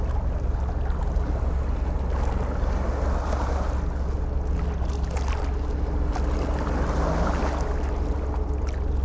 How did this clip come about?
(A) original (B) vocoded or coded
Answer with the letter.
A